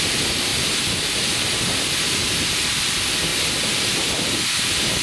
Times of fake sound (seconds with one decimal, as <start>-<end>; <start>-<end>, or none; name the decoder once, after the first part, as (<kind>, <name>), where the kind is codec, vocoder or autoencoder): none